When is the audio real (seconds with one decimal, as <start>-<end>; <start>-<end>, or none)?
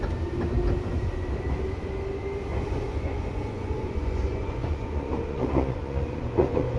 0.0-2.5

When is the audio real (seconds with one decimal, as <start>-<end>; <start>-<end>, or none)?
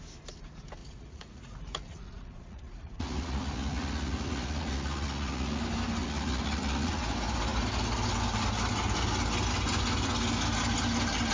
0.0-0.8; 5.6-6.0; 7.0-11.3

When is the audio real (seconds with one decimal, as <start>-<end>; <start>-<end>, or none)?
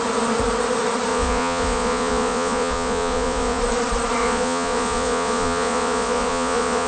0.0-1.1; 3.6-4.2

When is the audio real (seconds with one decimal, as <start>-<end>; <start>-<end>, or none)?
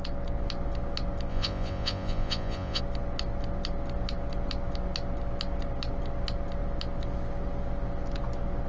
0.0-1.3; 2.8-8.7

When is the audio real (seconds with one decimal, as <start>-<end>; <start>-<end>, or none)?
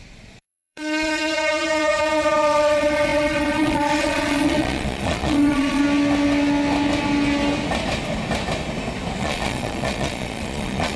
5.8-9.2